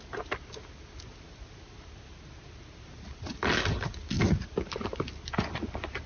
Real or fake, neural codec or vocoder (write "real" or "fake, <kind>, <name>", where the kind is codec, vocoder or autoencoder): real